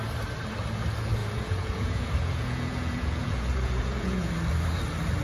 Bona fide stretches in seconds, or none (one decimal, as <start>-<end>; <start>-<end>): 0.0-1.2; 4.3-5.2